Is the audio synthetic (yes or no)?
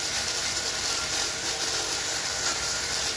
yes